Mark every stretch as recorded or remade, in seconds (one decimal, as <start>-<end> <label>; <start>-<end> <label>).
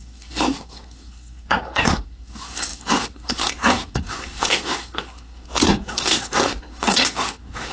0.0-7.7 remade